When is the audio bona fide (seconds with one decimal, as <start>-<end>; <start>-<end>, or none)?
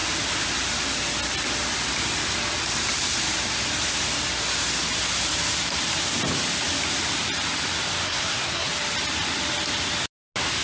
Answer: 0.0-8.0; 8.7-10.6